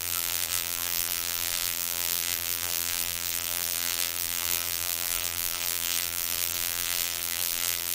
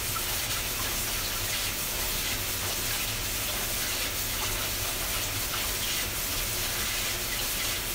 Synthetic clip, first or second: first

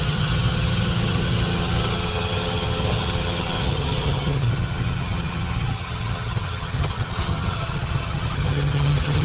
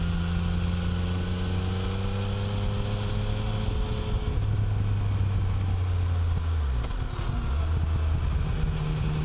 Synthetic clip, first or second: first